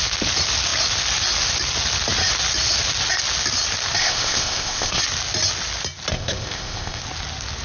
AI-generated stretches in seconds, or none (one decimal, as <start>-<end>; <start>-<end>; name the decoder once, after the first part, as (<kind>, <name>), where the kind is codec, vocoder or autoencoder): 4.0-5.0 (codec, ZipCodec); 6.1-7.0